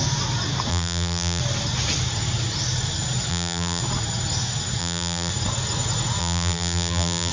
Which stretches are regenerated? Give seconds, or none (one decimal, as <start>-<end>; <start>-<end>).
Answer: 0.7-1.4; 3.3-3.8; 4.8-5.3; 6.2-7.3